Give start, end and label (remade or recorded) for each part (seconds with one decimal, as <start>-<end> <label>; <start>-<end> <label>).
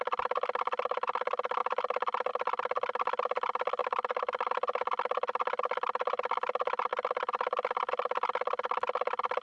0.0-3.8 recorded; 3.8-4.5 remade; 4.5-9.4 recorded